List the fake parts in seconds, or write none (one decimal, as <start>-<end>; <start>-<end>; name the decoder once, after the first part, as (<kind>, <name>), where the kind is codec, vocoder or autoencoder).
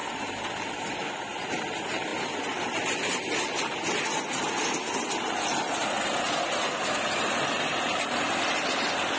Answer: none